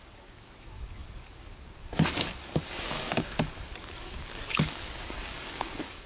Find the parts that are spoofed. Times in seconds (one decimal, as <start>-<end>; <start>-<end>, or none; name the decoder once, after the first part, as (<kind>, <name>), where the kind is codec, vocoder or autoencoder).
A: 0.0-6.1 (codec, DAC)